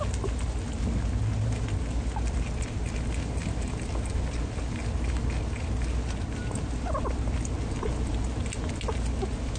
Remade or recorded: recorded